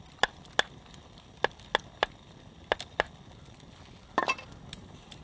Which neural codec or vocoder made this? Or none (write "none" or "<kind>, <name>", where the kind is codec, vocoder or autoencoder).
none